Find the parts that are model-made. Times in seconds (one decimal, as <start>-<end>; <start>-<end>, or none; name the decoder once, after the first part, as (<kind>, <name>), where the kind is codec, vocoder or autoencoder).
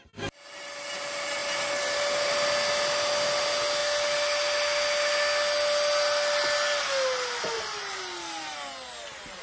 1.4-2.3 (vocoder, BigVGAN v2)